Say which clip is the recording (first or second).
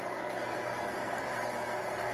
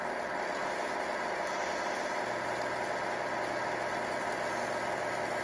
second